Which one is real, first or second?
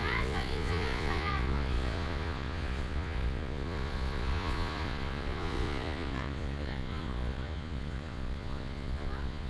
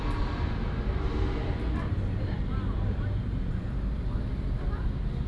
second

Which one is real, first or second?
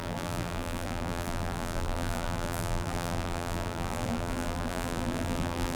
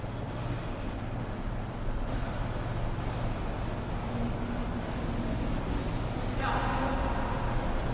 second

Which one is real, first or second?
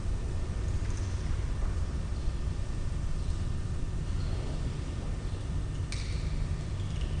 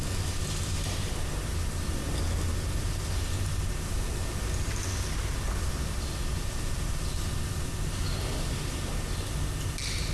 second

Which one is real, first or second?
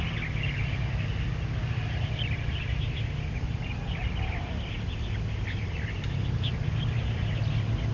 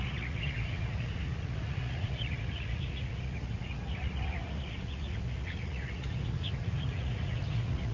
first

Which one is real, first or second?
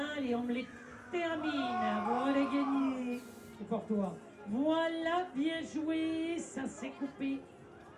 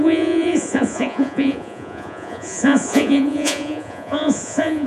first